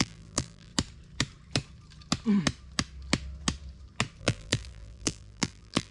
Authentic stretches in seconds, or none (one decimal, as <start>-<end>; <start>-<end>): 0.7-4.2